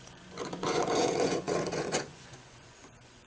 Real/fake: fake